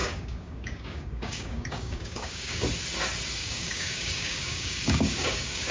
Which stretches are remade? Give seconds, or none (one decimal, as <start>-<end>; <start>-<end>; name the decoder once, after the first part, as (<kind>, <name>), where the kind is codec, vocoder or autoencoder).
0.0-2.6 (codec, DAC); 3.4-5.7